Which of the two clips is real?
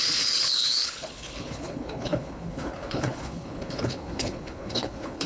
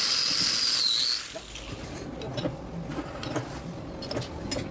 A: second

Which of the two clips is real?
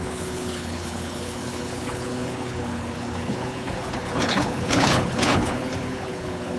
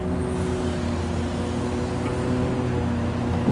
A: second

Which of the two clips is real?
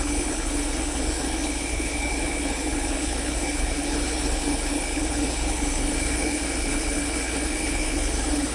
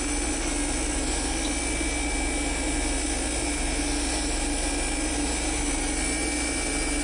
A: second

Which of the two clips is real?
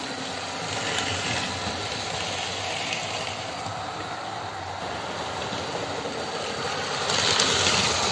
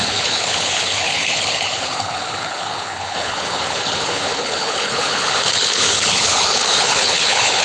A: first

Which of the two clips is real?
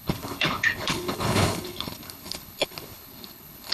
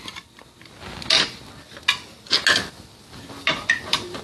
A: second